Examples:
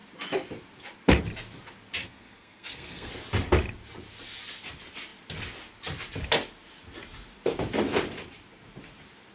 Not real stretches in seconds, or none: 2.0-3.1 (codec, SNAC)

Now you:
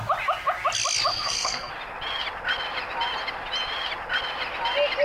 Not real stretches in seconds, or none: 1.1-1.7 (codec, SNAC)

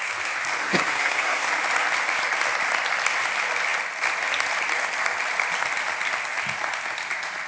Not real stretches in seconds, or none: 0.6-1.5 (codec, SNAC)

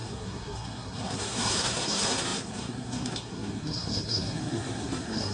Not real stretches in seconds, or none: 0.0-5.3 (codec, SNAC)

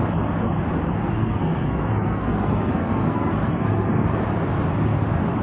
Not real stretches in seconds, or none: 1.0-4.2 (codec, SNAC)

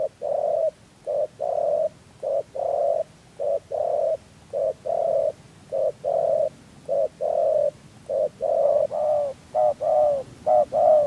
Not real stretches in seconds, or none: none

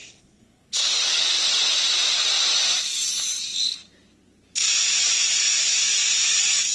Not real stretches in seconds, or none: 0.0-1.0 (codec, SNAC)

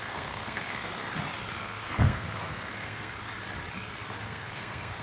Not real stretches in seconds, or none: 0.0-0.9 (codec, SNAC); 1.6-3.3; 4.2-5.0